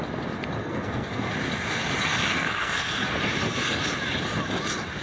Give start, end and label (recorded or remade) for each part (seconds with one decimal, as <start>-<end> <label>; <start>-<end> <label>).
0.0-0.6 recorded; 0.6-1.3 remade; 1.3-2.3 recorded; 2.3-3.1 remade; 3.1-5.0 recorded